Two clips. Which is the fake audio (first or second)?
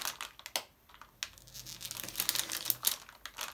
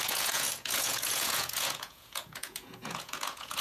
second